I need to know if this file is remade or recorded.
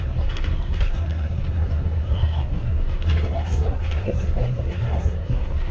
remade